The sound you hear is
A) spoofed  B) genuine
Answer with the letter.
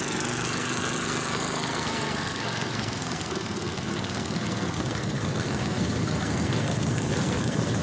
A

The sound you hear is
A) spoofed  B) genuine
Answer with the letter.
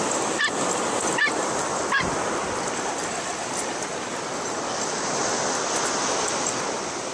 B